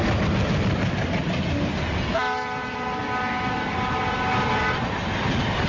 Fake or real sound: real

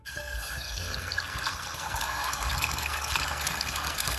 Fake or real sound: fake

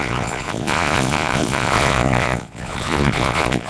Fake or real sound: fake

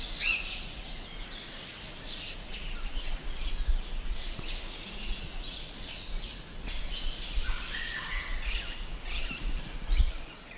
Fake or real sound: fake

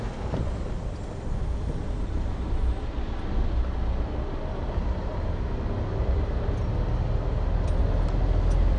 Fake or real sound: real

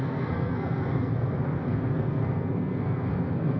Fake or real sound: fake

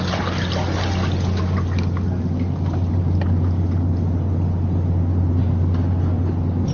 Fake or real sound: real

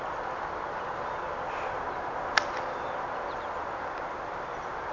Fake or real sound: real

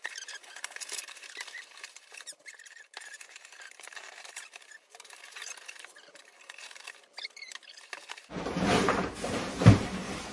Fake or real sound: fake